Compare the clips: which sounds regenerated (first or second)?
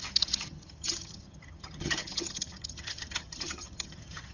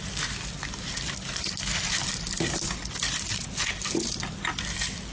first